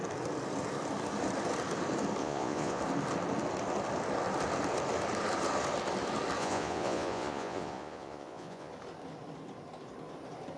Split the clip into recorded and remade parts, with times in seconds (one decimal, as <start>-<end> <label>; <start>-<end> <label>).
0.0-2.2 recorded; 2.2-2.8 remade; 2.8-6.4 recorded; 6.4-8.7 remade; 8.7-10.6 recorded